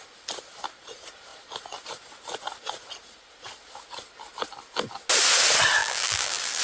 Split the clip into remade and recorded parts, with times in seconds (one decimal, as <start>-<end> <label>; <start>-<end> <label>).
0.0-5.8 recorded; 5.8-6.6 remade